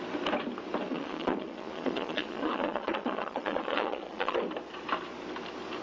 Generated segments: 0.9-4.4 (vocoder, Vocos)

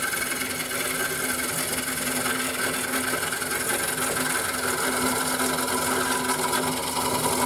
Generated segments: none